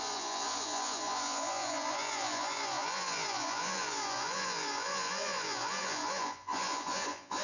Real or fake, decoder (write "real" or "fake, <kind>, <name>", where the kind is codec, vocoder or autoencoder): fake, vocoder, Vocos